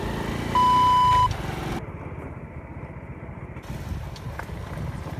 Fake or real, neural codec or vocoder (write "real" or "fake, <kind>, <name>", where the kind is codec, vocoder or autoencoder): real